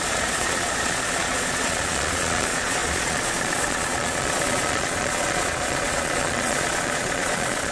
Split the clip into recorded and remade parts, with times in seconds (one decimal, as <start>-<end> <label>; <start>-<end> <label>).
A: 0.0-7.7 remade